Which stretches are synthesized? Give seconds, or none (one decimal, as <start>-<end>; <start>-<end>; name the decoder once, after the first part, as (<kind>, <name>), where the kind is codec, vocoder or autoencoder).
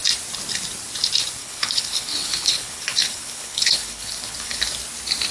1.4-4.6 (codec, HILCodec)